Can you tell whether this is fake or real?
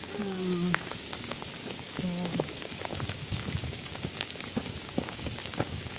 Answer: fake